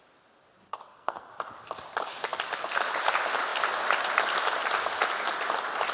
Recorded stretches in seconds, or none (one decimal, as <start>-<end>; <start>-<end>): 0.0-0.7; 1.3-5.9